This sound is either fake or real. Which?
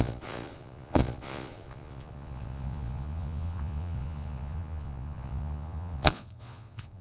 fake